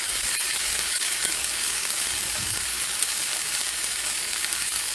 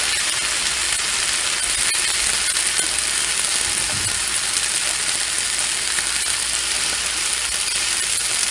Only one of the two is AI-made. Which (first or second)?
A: first